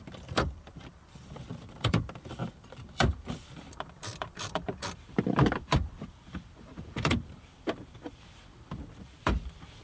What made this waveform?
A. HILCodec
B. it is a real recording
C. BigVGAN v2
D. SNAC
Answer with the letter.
C